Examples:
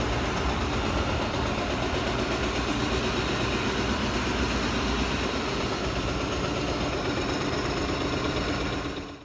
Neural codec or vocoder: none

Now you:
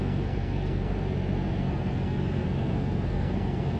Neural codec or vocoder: codec, SNAC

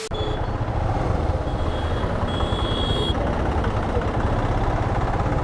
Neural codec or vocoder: none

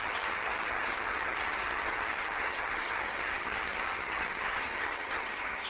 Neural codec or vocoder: vocoder, HiFi-GAN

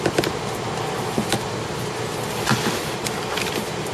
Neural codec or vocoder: none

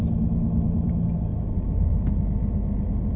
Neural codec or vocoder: none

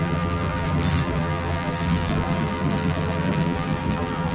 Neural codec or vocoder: vocoder, BigVGAN v2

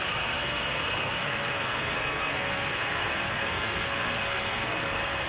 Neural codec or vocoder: codec, SNAC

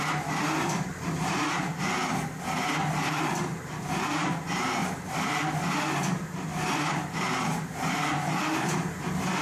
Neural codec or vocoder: none